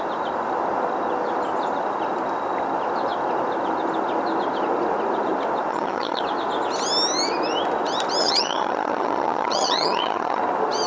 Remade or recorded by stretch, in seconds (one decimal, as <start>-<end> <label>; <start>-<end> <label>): 0.0-5.7 recorded; 5.7-6.2 remade; 6.2-8.2 recorded; 8.2-10.4 remade; 10.4-10.9 recorded